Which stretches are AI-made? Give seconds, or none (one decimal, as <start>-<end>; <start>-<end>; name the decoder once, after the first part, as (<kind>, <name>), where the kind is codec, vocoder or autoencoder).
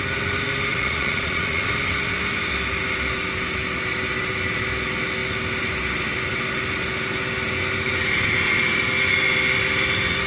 0.7-1.7 (vocoder, Vocos)